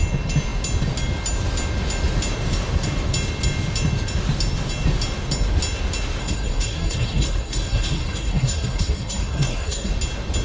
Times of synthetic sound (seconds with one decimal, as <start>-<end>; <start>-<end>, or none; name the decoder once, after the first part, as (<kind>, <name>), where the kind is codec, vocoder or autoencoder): 6.2-9.9 (codec, SNAC)